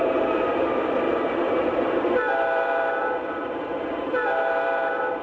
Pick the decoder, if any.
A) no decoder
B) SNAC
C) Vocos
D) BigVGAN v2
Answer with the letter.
D